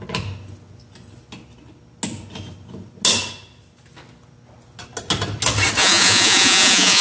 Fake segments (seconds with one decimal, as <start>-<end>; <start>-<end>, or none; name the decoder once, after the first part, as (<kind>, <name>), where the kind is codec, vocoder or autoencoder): 5.8-7.0 (vocoder, Vocos)